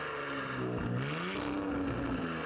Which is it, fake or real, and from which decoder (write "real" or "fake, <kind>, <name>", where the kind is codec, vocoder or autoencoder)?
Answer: real